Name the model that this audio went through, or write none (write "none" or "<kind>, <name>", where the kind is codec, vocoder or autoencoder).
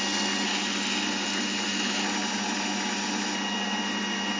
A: none